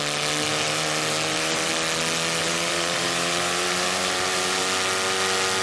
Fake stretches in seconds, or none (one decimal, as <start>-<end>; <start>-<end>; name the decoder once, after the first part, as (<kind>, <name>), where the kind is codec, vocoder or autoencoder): 0.5-1.7 (vocoder, BigVGAN v2); 2.4-4.6